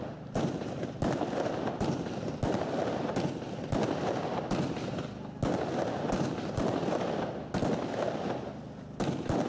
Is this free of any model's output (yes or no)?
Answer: yes